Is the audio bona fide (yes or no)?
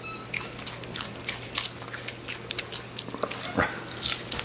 yes